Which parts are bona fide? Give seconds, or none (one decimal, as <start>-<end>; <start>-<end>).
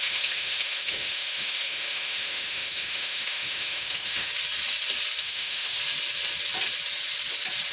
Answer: 4.3-5.2; 5.7-7.7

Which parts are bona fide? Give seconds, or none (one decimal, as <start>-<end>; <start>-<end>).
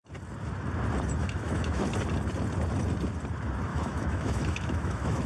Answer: 0.0-1.2; 1.8-3.7